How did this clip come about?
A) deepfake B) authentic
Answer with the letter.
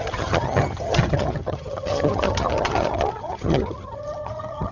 A